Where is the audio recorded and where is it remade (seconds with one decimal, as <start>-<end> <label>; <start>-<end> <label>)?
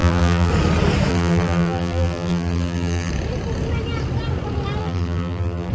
0.0-0.5 remade; 0.5-1.1 recorded; 1.1-3.1 remade; 3.1-4.8 recorded; 4.8-5.7 remade